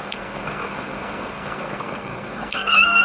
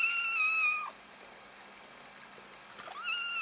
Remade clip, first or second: first